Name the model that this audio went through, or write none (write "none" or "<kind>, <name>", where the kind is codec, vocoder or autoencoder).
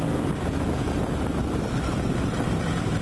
none